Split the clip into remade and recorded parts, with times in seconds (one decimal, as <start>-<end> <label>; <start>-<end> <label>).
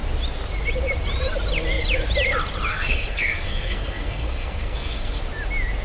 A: 0.0-2.7 recorded; 2.7-5.2 remade; 5.2-5.8 recorded